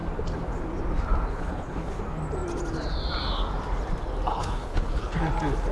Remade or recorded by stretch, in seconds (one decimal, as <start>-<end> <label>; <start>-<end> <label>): 0.0-1.3 recorded; 1.3-2.0 remade; 2.0-4.3 recorded; 4.3-5.2 remade; 5.2-5.7 recorded